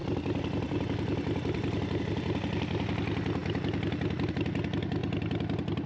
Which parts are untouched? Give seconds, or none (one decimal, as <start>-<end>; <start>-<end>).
2.0-5.9